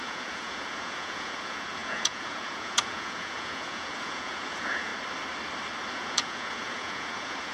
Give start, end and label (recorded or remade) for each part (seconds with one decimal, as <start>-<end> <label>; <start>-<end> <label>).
0.0-4.9 remade; 4.9-5.9 recorded; 5.9-7.5 remade